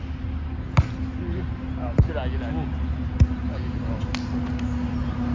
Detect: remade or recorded recorded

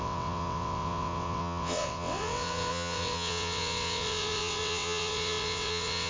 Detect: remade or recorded remade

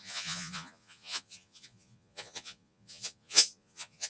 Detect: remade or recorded remade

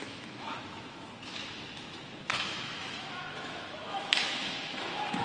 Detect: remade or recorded remade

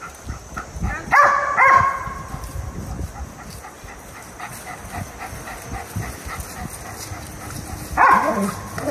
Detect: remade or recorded recorded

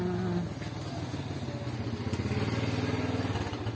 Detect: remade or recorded recorded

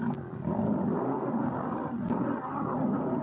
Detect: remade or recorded recorded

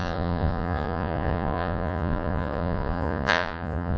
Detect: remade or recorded remade